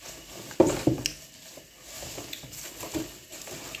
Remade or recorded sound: recorded